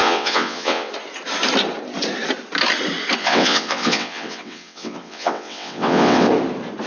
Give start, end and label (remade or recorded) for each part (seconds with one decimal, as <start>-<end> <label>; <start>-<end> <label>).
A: 0.0-0.9 remade; 0.9-3.2 recorded; 3.2-6.3 remade; 6.3-6.9 recorded